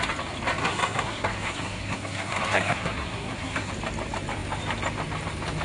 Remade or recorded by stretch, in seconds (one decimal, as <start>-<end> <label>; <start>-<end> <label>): 0.0-0.6 recorded; 0.6-3.7 remade; 3.7-5.6 recorded